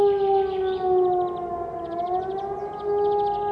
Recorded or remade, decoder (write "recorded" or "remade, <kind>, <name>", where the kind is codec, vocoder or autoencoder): recorded